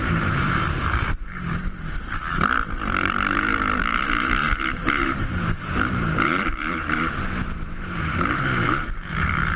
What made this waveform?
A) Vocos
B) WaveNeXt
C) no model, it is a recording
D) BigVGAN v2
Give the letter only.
D